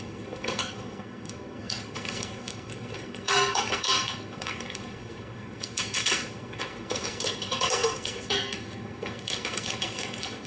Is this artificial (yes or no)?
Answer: yes